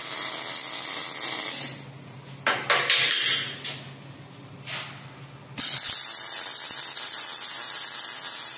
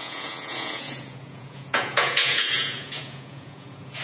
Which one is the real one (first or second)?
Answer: first